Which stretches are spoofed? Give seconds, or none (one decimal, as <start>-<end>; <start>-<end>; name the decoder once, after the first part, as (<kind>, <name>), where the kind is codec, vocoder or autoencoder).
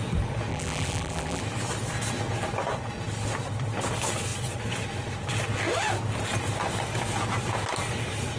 0.5-1.4 (vocoder, BigVGAN v2)